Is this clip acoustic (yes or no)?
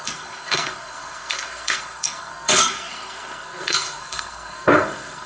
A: no